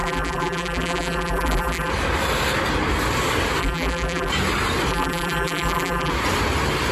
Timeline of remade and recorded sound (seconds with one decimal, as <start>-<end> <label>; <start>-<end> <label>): 0.0-1.9 remade; 1.9-3.6 recorded; 3.6-4.3 remade; 4.3-4.9 recorded; 4.9-6.1 remade; 6.1-6.9 recorded